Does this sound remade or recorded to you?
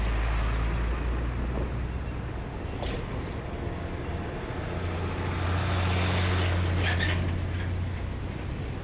recorded